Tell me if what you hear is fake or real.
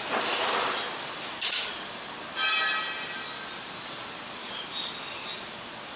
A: real